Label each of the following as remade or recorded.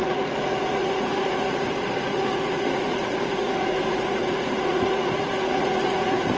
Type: remade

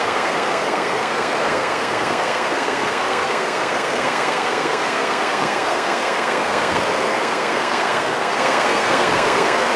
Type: remade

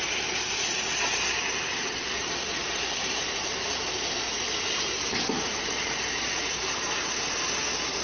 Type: remade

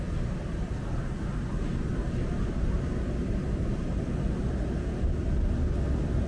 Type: recorded